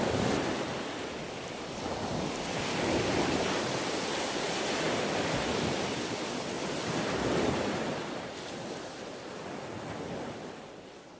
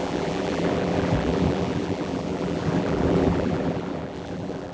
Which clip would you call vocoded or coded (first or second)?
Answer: second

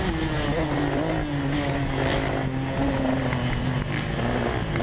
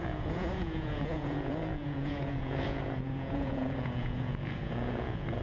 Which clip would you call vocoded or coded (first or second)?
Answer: second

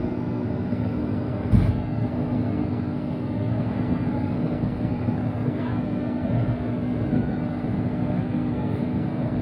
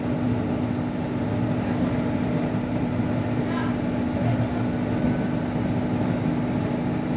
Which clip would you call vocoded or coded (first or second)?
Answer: first